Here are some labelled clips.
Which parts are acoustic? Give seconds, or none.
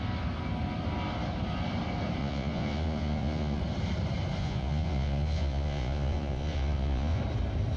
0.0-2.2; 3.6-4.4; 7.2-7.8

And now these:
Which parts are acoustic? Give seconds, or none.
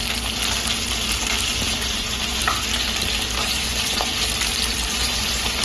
0.0-1.8; 2.4-3.4; 4.1-4.9